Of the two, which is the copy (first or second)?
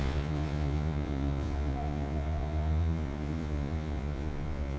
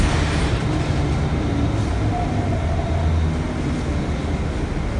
first